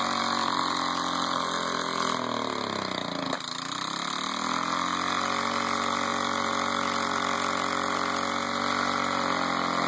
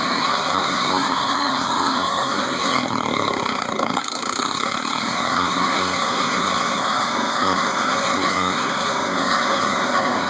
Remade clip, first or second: second